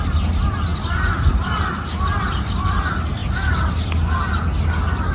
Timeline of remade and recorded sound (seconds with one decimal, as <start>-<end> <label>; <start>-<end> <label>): 0.0-5.1 recorded